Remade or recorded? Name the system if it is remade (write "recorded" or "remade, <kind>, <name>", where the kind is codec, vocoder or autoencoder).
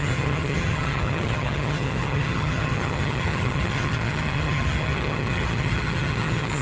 remade, vocoder, HiFi-GAN